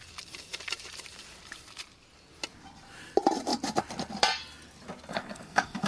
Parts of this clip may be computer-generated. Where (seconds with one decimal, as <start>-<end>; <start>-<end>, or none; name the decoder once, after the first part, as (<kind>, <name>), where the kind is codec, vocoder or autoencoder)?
5.1-5.9 (codec, SNAC)